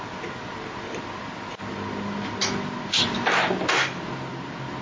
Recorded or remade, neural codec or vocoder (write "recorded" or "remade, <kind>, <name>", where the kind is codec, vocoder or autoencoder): recorded